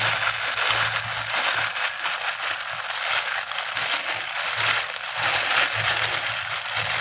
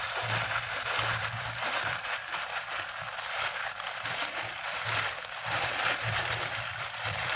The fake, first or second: second